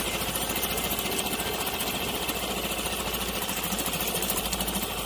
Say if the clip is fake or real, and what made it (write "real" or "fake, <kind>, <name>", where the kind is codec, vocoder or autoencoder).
real